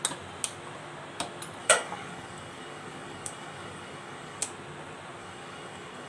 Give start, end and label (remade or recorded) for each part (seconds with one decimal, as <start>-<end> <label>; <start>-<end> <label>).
0.0-1.6 recorded; 1.6-4.4 remade; 4.4-5.2 recorded; 5.2-6.1 remade